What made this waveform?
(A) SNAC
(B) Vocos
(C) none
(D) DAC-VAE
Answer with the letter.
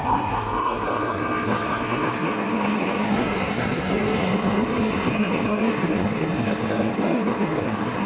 A